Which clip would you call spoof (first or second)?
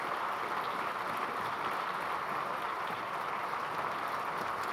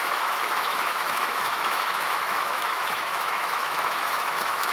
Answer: second